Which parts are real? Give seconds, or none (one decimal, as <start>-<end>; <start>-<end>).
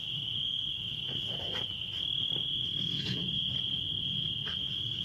3.2-4.6